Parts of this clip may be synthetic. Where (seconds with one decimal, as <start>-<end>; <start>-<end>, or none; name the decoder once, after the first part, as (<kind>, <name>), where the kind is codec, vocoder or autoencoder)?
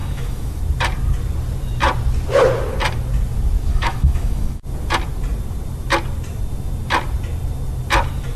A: 0.0-0.6 (autoencoder, DAC-VAE); 3.7-4.6